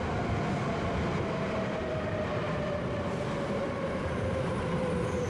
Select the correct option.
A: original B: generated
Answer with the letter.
A